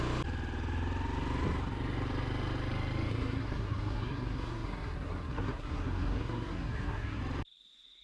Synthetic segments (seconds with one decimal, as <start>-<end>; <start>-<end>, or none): 3.1-7.2